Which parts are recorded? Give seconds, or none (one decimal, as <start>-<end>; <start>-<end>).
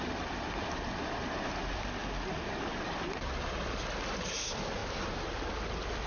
0.0-6.1